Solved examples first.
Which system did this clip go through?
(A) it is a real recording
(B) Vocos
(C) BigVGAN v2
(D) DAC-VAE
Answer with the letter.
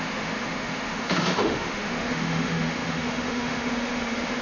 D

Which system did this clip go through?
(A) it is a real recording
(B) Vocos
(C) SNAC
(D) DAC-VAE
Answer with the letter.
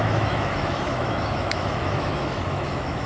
D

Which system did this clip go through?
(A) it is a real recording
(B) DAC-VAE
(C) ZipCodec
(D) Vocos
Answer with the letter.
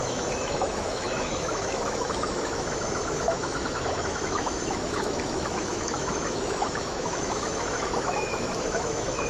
B